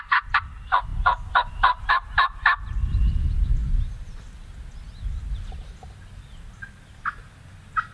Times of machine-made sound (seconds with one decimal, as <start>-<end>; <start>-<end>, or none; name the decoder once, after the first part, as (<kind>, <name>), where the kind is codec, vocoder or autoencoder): none